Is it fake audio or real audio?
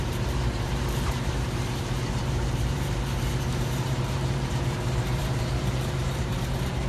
fake